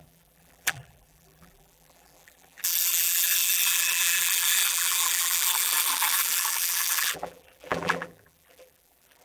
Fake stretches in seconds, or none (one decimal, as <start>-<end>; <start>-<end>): 0.0-9.2